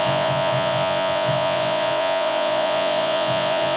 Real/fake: fake